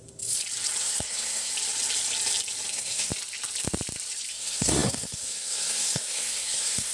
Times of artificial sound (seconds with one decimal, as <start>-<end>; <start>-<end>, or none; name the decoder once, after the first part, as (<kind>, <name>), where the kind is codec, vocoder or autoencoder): 0.8-1.5 (codec, SNAC); 2.7-3.1; 4.3-6.9

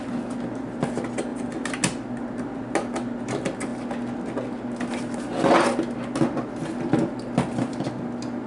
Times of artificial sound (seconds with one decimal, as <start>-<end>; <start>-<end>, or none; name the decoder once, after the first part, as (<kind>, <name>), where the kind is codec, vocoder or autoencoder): none

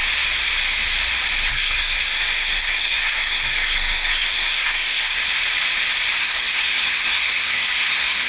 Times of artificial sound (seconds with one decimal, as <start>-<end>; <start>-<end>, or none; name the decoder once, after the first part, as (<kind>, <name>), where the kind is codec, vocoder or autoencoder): 1.5-5.1 (codec, SNAC); 6.2-8.3

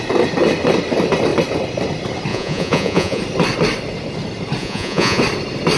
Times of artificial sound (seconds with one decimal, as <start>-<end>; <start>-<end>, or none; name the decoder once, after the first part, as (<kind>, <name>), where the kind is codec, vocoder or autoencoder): 2.3-3.2 (vocoder, Vocos); 4.6-5.2

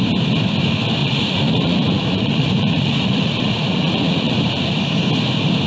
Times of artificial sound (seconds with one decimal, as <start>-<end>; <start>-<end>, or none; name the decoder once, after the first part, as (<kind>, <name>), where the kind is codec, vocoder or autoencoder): 1.0-4.4 (vocoder, Vocos)

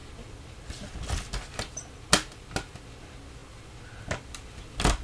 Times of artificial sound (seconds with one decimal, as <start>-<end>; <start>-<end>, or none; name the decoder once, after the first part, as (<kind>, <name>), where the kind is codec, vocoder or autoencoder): none